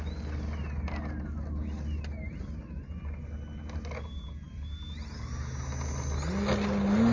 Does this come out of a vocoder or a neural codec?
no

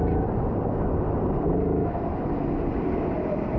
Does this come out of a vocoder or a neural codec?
no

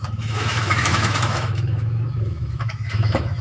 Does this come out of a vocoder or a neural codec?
yes